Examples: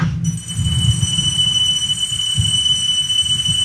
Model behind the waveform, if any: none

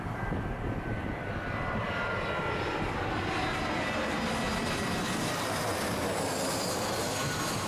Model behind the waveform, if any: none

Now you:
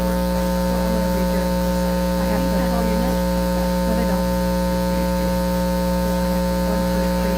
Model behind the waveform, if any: none